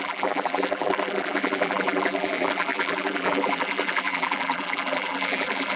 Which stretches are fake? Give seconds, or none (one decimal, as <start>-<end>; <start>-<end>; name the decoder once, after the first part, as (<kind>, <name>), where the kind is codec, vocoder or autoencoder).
0.0-5.8 (vocoder, BigVGAN v2)